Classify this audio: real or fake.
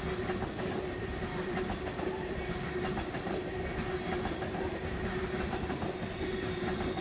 real